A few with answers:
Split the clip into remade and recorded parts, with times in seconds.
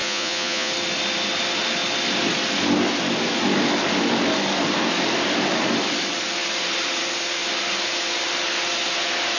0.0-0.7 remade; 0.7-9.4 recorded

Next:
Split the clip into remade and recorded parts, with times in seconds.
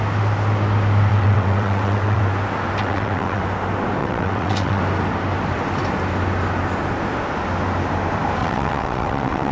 0.0-1.1 recorded; 1.1-2.2 remade; 2.2-2.8 recorded; 2.8-3.4 remade; 3.4-4.0 recorded; 4.0-4.8 remade; 4.8-8.4 recorded; 8.4-9.5 remade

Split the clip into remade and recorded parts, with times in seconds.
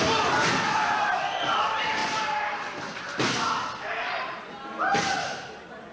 0.0-5.9 remade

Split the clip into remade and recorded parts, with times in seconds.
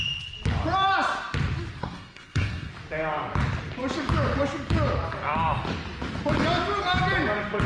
0.0-1.8 recorded; 1.8-2.7 remade; 2.7-7.7 recorded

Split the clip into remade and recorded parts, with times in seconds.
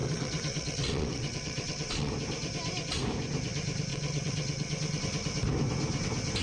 0.0-2.1 remade; 2.1-3.9 recorded; 3.9-5.0 remade; 5.0-6.4 recorded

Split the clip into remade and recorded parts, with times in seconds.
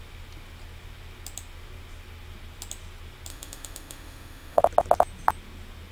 0.0-3.3 recorded; 3.3-4.6 remade; 4.6-5.9 recorded